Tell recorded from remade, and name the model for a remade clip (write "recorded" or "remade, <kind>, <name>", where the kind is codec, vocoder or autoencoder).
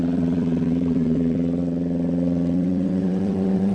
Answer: remade, vocoder, WaveNeXt